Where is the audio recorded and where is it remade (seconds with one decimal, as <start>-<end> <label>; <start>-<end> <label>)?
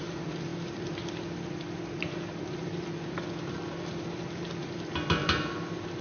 0.0-6.0 recorded